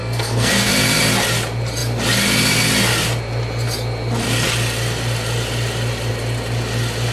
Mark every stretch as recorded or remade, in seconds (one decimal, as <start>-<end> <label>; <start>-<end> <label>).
0.0-0.7 remade; 0.7-7.1 recorded